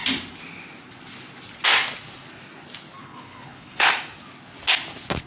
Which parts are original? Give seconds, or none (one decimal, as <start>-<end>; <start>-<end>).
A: 0.0-3.0; 3.9-5.3